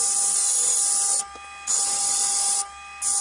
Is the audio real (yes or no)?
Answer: yes